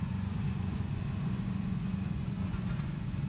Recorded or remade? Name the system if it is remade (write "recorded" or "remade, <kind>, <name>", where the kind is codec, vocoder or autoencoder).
remade, vocoder, Vocos